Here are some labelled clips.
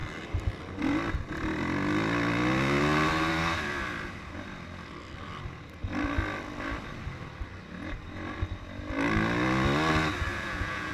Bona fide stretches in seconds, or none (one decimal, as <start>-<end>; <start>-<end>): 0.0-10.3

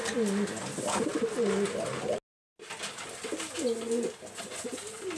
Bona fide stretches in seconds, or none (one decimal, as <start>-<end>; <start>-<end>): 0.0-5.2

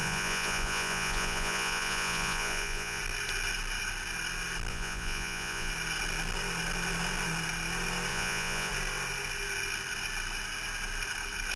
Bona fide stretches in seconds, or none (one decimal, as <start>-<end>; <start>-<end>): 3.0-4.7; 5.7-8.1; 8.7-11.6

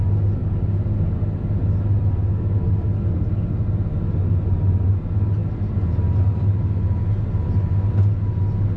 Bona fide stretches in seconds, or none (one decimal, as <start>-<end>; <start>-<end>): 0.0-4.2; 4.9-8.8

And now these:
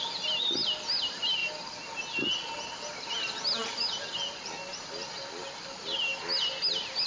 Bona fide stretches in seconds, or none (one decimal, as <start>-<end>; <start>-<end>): 0.0-7.1

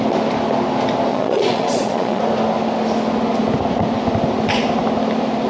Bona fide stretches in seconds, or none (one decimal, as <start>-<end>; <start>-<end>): 0.0-1.1; 2.2-5.5

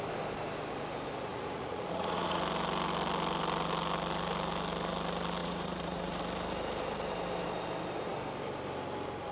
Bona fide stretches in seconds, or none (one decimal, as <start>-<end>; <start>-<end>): 0.0-1.3; 2.4-5.4; 6.2-9.3

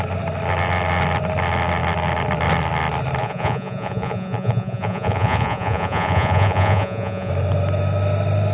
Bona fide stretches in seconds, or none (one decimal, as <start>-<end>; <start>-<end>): 0.0-3.2; 7.3-8.5